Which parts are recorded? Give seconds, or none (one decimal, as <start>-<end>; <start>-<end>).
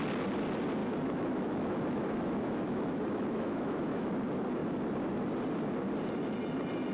0.0-0.8; 4.1-6.9